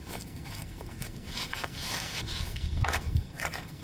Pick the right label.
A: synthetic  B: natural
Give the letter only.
A